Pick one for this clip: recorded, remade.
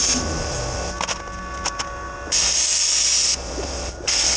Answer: recorded